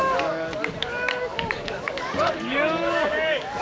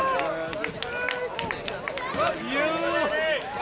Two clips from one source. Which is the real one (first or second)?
second